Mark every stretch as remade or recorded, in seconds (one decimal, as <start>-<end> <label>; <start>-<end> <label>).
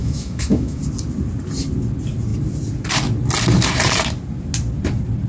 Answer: 0.0-0.8 remade; 0.8-5.3 recorded